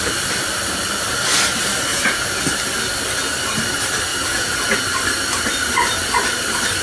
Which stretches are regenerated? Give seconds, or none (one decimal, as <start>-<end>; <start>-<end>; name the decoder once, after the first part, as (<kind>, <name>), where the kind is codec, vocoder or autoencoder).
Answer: 1.9-2.4 (vocoder, Vocos); 4.1-4.8